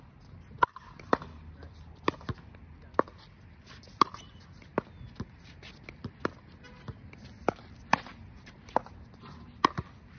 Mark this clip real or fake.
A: real